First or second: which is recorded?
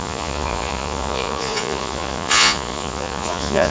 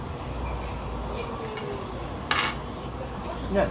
second